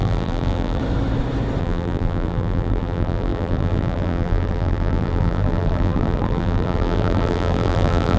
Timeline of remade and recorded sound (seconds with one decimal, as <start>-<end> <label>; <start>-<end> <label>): 0.0-0.8 remade; 0.8-1.6 recorded; 1.6-8.2 remade